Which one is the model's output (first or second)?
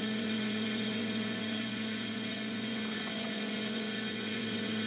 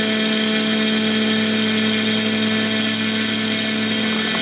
first